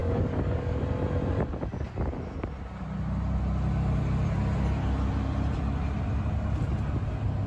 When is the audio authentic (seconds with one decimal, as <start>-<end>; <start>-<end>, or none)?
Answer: 0.8-7.5